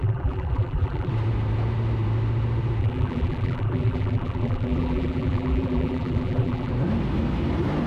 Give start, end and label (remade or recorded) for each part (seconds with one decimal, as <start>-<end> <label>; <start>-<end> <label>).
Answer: 0.0-1.1 remade; 1.1-2.8 recorded; 2.8-6.7 remade; 6.7-7.9 recorded